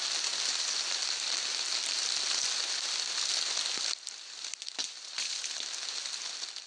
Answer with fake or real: real